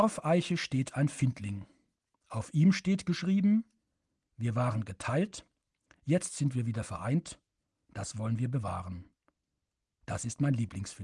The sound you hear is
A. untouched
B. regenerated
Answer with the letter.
A